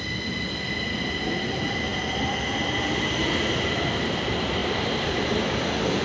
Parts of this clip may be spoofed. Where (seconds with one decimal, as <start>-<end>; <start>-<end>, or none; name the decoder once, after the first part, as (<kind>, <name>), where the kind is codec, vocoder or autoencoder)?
4.6-5.4 (vocoder, BigVGAN v2)